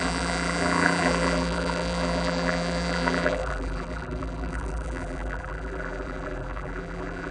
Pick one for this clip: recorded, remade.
remade